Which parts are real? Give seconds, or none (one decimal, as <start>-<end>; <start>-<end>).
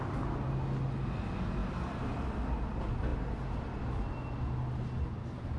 0.0-1.6; 2.4-5.6